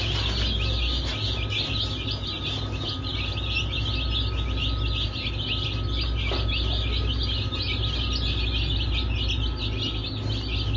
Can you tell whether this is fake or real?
real